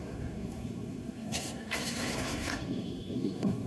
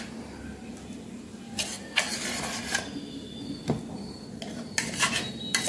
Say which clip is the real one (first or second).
second